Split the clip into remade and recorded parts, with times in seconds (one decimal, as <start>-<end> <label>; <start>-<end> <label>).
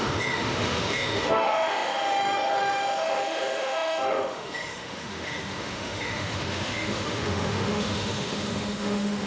0.0-9.3 remade